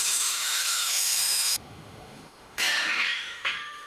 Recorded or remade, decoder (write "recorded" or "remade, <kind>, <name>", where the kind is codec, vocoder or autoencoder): remade, autoencoder, DAC-VAE